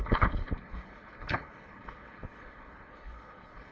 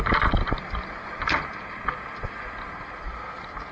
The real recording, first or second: second